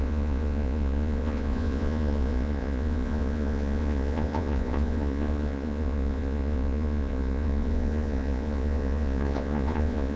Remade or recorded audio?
remade